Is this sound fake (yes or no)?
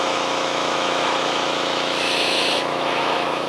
yes